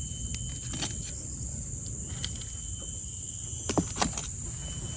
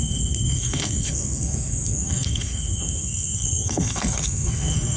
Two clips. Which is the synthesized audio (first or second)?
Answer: second